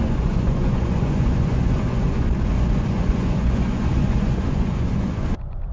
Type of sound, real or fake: fake